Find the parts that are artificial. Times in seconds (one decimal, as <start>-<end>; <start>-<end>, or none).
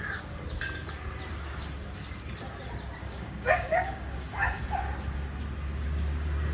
3.0-4.6